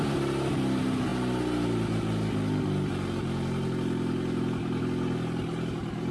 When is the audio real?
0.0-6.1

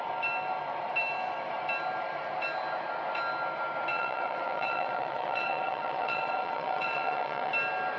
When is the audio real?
0.0-3.9; 7.5-8.0

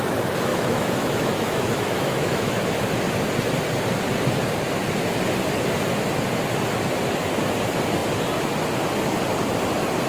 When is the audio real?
0.0-0.5; 3.0-10.1

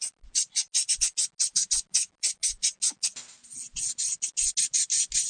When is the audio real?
0.0-5.3

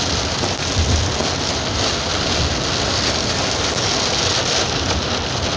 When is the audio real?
0.0-5.6